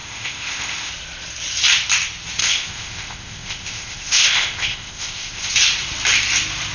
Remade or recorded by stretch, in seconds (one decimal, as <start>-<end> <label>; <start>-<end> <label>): 0.0-0.9 remade; 0.9-2.4 recorded; 2.4-5.5 remade; 5.5-6.7 recorded